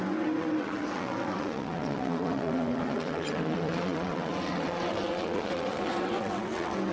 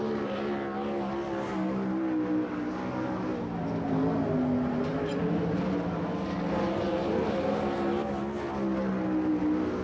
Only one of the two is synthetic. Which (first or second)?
first